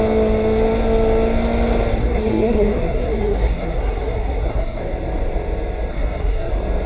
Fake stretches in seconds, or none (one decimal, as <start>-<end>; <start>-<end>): 2.0-4.8; 5.9-6.5